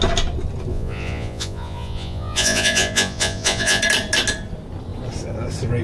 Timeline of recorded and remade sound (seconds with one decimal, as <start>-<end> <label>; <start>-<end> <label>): 0.0-0.7 recorded; 0.7-3.8 remade; 3.8-5.8 recorded